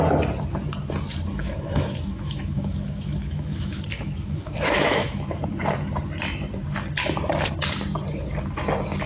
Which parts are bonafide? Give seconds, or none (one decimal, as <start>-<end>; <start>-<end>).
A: 0.0-1.4; 5.4-9.1